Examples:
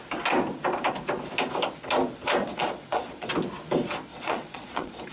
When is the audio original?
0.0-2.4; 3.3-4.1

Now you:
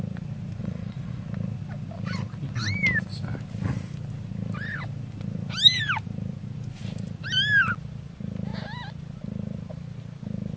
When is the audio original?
0.0-0.6; 1.2-10.6

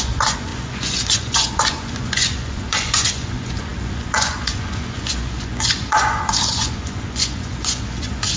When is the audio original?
none

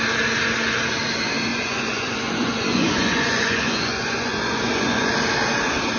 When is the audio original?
0.0-1.5; 5.1-6.0

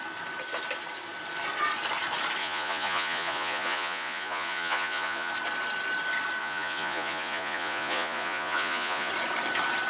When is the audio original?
0.0-2.4; 5.3-6.4; 9.1-9.9

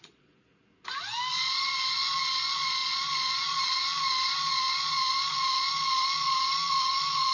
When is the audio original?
0.5-1.3

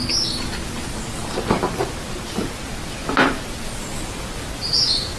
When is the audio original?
0.0-5.2

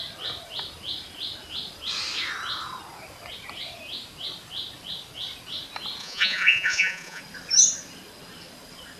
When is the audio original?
0.0-6.0; 7.2-9.0